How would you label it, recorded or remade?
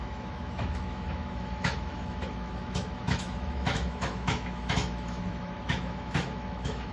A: remade